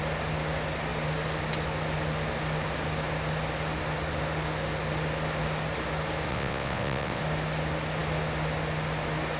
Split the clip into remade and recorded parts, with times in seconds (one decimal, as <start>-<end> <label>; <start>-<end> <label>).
0.0-6.3 recorded; 6.3-7.2 remade; 7.2-9.4 recorded